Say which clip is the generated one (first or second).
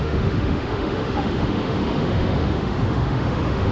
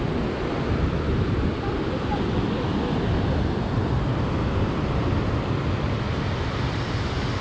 first